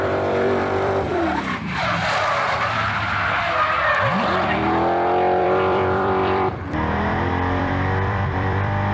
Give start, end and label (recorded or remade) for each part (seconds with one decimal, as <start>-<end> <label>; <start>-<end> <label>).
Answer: 0.0-1.1 remade; 1.1-5.4 recorded; 5.4-8.9 remade